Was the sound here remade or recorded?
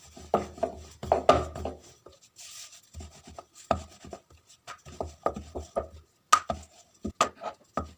recorded